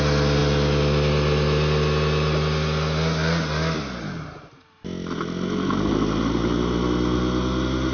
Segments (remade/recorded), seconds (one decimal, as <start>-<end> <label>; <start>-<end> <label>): 0.0-7.9 recorded